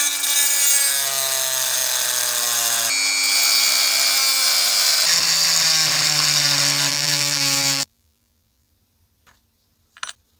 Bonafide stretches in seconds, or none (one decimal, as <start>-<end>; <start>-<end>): 0.0-6.9; 8.7-10.4